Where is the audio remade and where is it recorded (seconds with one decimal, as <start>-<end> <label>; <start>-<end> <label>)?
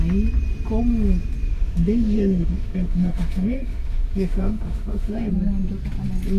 0.0-1.5 recorded; 1.5-5.3 remade; 5.3-6.4 recorded